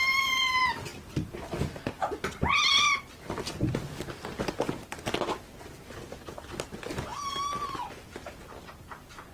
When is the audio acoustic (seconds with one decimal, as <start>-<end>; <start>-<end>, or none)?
0.0-9.3